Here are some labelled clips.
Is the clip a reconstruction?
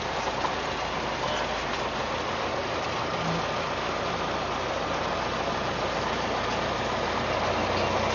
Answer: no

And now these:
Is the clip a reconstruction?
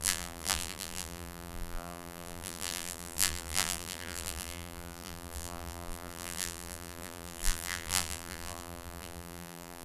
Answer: yes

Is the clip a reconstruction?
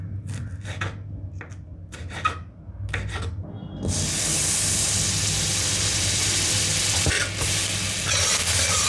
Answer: no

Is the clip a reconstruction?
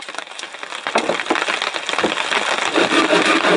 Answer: no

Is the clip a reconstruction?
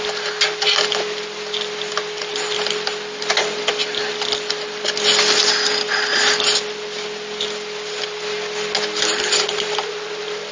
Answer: no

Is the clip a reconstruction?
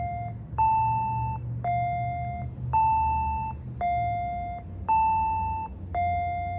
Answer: no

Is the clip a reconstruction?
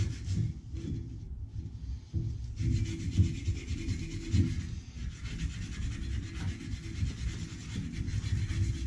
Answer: no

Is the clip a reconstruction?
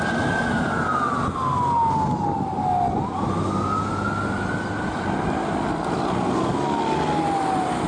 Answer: no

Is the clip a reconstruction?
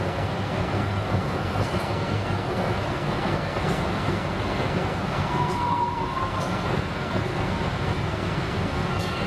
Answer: yes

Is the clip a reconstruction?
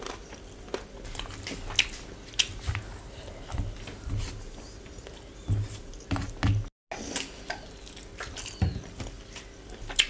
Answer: no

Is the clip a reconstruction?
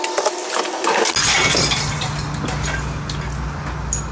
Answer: no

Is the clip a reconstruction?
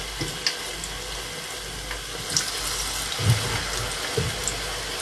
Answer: no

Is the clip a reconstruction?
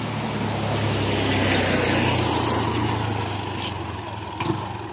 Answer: no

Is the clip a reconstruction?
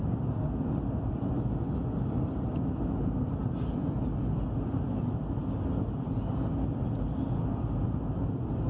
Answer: no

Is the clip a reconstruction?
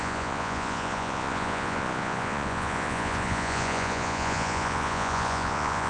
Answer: yes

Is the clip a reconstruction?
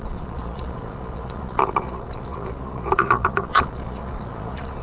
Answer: yes